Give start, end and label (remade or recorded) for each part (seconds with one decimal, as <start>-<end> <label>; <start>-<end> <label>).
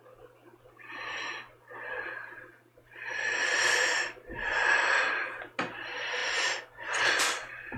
0.0-7.8 recorded